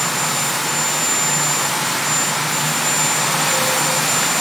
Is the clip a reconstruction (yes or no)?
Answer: no